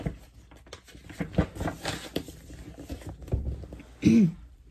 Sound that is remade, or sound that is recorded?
recorded